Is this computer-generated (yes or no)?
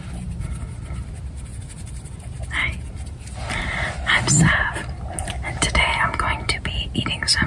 no